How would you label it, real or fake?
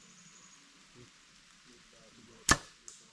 real